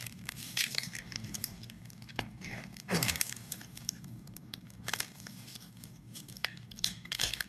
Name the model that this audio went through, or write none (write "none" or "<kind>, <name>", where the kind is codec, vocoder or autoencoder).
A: codec, DAC